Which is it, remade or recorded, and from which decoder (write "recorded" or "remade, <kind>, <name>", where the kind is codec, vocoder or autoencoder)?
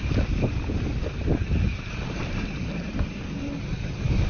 recorded